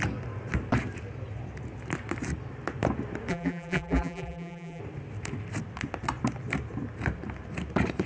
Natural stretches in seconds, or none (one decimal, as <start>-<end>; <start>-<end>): 0.0-3.3; 4.8-8.1